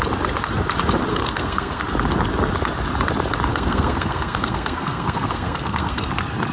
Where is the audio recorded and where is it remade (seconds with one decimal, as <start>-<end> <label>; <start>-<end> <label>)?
0.0-1.1 recorded; 1.1-1.8 remade; 1.8-3.5 recorded; 3.5-6.1 remade; 6.1-6.5 recorded